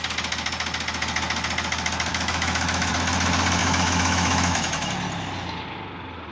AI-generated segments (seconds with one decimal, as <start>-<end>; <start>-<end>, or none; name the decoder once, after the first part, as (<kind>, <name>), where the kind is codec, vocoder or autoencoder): 2.1-2.9 (autoencoder, DAC-VAE); 3.6-4.9